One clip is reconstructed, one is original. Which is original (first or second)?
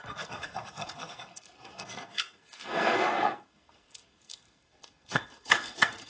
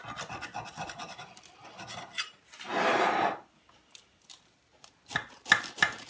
second